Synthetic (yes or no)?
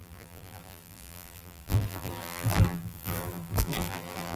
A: yes